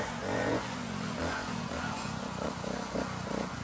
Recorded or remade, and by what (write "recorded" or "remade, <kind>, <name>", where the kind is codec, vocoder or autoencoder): remade, vocoder, Vocos